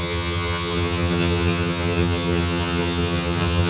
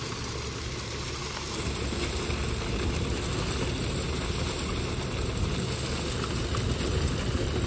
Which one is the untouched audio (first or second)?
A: second